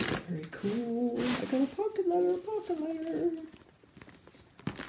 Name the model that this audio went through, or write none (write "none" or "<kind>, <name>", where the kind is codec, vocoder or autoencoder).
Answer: none